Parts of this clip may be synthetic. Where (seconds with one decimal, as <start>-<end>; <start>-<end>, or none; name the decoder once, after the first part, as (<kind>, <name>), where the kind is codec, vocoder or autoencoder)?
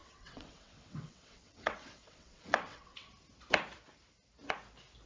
0.0-3.1 (vocoder, WaveNeXt)